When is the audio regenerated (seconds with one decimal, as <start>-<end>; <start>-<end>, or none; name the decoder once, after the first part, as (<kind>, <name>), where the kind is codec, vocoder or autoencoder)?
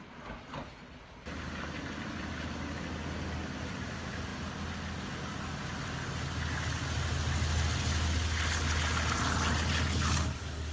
none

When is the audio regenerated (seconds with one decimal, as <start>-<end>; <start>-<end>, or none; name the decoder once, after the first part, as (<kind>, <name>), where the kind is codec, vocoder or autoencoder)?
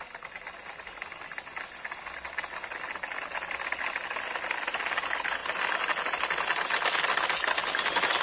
none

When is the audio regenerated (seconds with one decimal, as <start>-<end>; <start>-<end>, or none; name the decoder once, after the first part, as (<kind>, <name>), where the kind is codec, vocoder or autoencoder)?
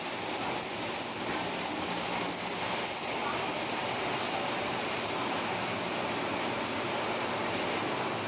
none